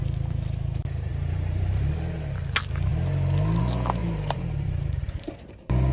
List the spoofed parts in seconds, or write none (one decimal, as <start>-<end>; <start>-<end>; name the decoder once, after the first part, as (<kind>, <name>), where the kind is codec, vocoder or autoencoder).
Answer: 1.1-2.2 (vocoder, BigVGAN v2); 4.0-5.3